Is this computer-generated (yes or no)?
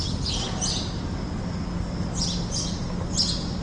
no